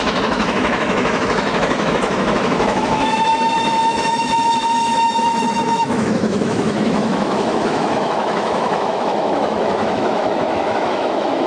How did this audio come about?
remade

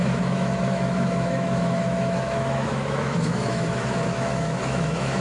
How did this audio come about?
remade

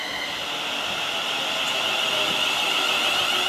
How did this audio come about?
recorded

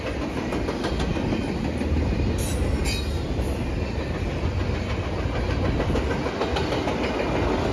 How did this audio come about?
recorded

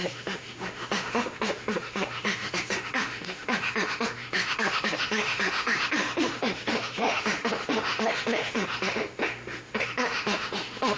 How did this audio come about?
remade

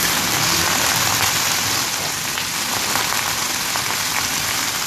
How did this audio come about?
recorded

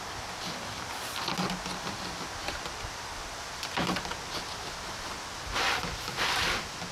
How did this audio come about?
recorded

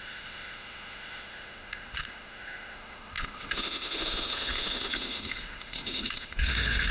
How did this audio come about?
remade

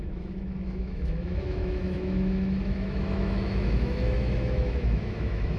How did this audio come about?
remade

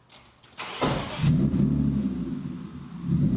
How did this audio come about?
recorded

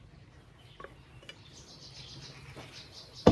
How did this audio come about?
recorded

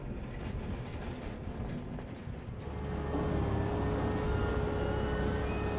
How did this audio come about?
recorded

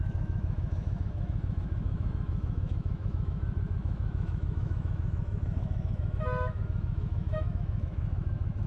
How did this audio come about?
remade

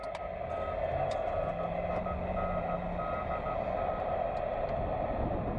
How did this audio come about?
recorded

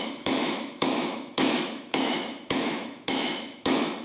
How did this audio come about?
remade